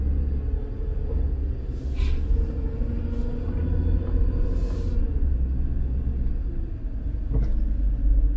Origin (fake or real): real